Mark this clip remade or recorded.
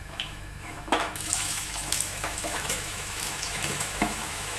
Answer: remade